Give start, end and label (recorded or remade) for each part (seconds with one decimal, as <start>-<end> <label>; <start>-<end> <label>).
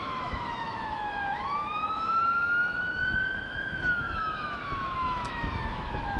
0.0-6.2 remade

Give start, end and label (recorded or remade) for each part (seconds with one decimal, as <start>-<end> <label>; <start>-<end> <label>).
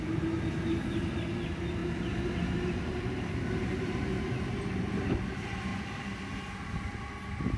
0.0-7.6 recorded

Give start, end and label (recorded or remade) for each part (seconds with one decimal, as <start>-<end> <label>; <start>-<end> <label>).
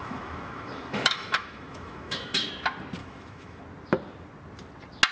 0.0-2.5 remade; 2.5-3.0 recorded; 3.0-3.6 remade; 3.6-5.1 recorded